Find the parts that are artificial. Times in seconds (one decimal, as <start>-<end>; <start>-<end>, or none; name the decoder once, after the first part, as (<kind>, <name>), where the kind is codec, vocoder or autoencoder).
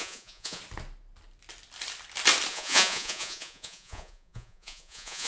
0.0-0.6 (vocoder, Vocos); 2.5-5.3